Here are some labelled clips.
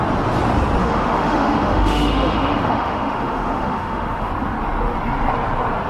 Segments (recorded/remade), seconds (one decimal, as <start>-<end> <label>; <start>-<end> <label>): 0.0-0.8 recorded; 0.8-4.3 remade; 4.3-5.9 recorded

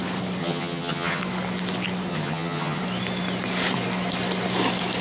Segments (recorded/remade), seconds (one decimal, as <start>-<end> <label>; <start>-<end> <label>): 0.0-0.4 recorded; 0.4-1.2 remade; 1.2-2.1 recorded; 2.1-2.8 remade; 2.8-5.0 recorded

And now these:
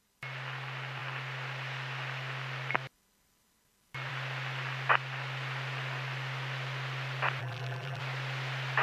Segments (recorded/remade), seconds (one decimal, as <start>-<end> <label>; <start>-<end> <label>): 0.0-7.4 recorded; 7.4-8.0 remade; 8.0-8.8 recorded